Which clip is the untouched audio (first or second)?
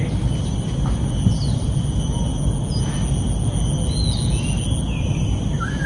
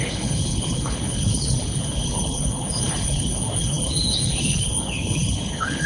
first